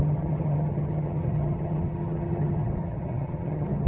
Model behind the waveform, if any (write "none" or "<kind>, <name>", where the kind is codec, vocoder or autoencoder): vocoder, HiFi-GAN